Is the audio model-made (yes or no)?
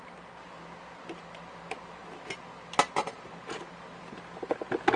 no